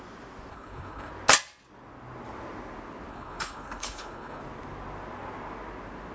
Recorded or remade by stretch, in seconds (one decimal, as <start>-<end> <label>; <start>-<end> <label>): 0.0-0.5 recorded; 0.5-1.1 remade; 1.1-3.1 recorded; 3.1-4.4 remade; 4.4-6.1 recorded